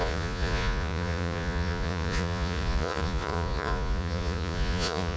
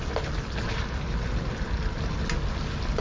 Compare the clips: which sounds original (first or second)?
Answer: second